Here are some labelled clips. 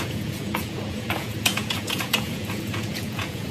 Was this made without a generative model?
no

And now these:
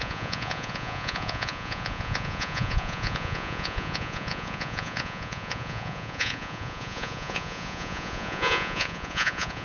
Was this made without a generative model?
no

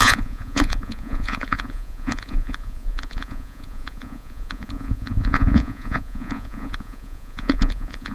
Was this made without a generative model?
no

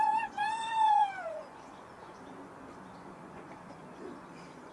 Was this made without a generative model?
no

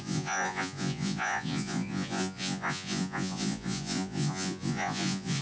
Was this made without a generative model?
no